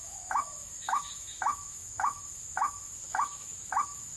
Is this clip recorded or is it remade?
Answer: remade